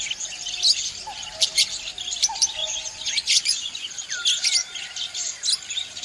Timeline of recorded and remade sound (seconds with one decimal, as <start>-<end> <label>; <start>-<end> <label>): 0.0-2.6 recorded; 2.6-3.9 remade; 3.9-6.0 recorded